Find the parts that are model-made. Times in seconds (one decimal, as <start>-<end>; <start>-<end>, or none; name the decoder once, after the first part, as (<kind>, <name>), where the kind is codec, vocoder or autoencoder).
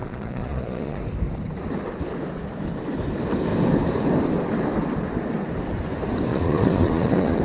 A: 0.0-1.0 (vocoder, Vocos); 6.3-7.4